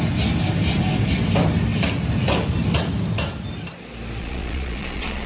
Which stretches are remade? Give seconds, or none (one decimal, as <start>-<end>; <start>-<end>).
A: 4.2-5.3